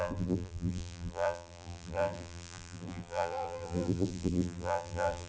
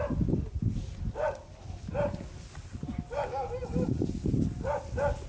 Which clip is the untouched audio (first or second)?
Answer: second